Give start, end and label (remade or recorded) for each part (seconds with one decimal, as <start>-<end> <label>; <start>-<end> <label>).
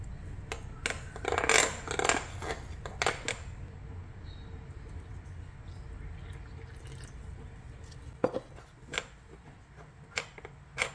0.0-10.9 recorded